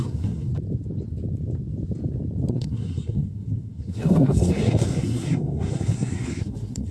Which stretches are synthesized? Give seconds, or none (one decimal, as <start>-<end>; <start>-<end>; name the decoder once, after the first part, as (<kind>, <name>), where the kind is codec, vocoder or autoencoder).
0.0-0.5 (codec, SNAC); 2.5-6.9